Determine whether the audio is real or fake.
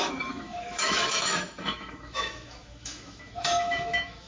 fake